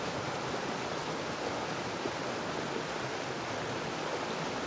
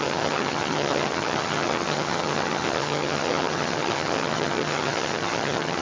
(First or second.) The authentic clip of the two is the first